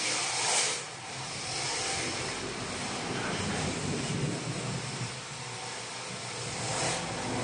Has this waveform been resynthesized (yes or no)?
no